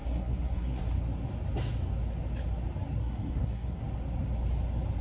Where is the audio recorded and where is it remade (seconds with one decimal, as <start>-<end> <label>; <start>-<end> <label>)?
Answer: 0.0-0.8 remade; 0.8-3.0 recorded; 3.0-3.8 remade; 3.8-5.0 recorded